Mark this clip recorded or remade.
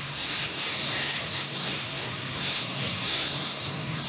remade